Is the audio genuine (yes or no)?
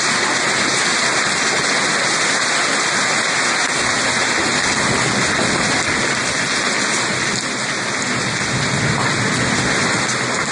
yes